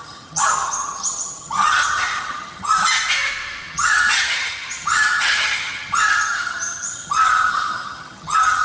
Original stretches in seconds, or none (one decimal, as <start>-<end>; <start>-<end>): 2.7-3.7